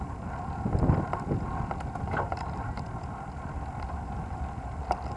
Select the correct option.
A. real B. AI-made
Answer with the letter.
A